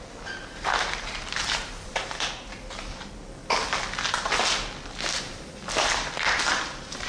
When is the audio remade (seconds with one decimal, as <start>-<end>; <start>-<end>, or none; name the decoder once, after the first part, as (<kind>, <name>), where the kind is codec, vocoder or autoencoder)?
0.0-3.4 (vocoder, BigVGAN v2); 5.2-7.1